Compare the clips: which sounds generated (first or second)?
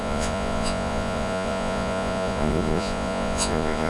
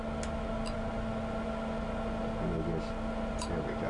first